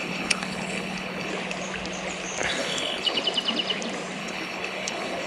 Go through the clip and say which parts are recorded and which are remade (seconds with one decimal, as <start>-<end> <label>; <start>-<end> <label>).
0.0-1.3 remade; 1.3-2.6 recorded; 2.6-3.2 remade; 3.2-4.2 recorded; 4.2-5.3 remade